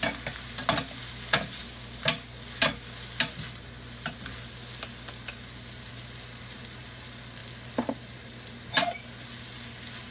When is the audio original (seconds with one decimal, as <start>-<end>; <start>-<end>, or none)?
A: 0.0-10.1